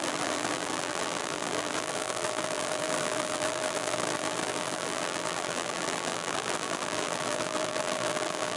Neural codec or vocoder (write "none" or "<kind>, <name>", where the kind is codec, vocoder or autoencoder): vocoder, BigVGAN v2